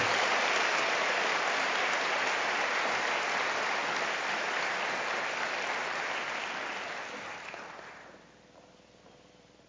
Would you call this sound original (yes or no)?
yes